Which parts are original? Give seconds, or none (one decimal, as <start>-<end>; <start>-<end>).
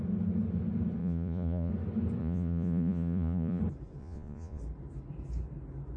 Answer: 0.0-1.0; 1.7-2.2; 3.6-4.0; 4.6-6.0